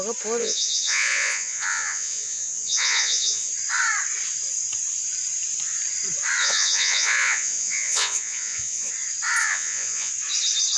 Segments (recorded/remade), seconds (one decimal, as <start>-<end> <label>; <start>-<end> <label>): 0.0-0.4 recorded; 0.4-3.5 remade; 3.5-6.4 recorded; 6.4-8.9 remade; 8.9-9.4 recorded; 9.4-10.1 remade; 10.1-10.8 recorded